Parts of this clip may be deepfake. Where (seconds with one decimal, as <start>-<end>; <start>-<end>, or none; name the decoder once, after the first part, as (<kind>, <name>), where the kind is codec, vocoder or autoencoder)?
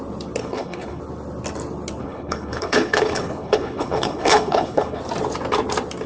0.4-1.0 (codec, HILCodec); 2.0-5.0